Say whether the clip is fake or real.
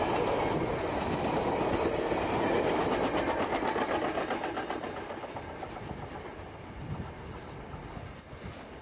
real